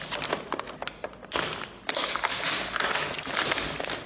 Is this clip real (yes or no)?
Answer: yes